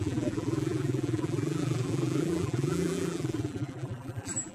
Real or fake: fake